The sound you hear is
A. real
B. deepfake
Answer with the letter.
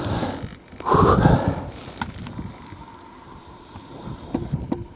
B